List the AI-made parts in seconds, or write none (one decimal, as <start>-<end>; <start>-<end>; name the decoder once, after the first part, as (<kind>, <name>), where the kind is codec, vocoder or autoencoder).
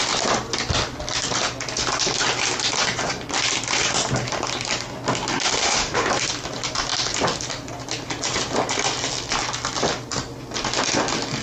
5.6-6.1 (autoencoder, DAC-VAE)